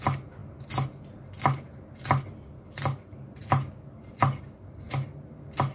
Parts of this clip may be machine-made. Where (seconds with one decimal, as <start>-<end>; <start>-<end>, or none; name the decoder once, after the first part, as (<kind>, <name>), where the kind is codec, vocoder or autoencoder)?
none